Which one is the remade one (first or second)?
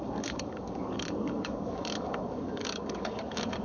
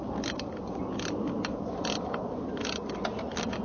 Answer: first